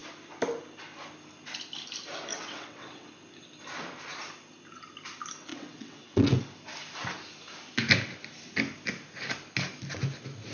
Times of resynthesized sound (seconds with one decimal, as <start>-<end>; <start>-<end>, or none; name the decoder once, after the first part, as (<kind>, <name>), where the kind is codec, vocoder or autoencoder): 2.3-3.1 (vocoder, WaveNeXt); 5.5-6.4